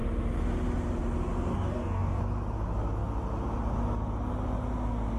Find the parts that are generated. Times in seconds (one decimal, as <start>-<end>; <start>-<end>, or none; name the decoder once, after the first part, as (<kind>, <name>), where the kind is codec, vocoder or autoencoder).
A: 1.5-2.2 (codec, DAC)